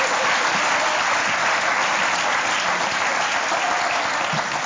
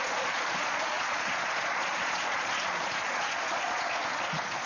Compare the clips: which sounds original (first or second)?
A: first